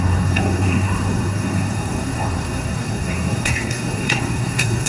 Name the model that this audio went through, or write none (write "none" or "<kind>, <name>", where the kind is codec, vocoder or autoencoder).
codec, SNAC